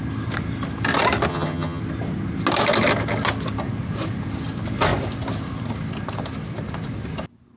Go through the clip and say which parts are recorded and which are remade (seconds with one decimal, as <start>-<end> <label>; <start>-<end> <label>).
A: 0.0-1.3 recorded; 1.3-1.8 remade; 1.8-7.6 recorded